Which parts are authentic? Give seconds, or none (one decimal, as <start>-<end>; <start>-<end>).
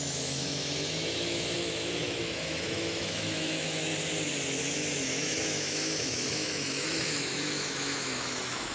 3.9-4.6